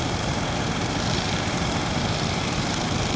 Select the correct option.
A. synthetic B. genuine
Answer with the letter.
A